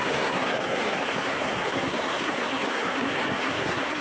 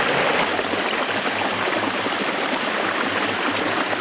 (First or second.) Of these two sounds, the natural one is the second